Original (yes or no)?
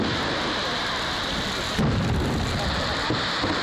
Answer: yes